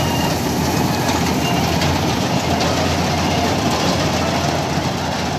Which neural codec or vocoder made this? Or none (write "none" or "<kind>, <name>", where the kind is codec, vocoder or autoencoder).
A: none